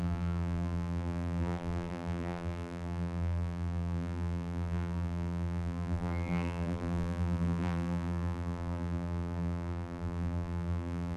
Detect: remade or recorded remade